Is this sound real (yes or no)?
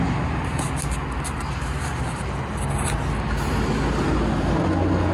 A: yes